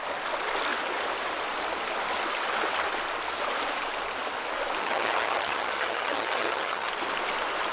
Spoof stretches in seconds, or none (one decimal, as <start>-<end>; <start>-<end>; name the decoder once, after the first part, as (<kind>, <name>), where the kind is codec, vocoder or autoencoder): 4.8-6.9 (vocoder, HiFi-GAN)